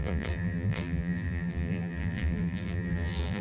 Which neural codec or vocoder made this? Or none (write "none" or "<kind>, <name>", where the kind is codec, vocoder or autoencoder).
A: vocoder, BigVGAN v2